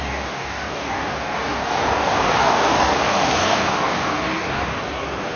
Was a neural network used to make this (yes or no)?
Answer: yes